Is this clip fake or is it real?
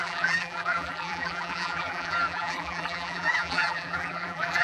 fake